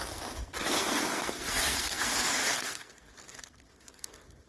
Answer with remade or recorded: remade